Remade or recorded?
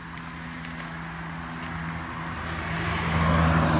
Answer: recorded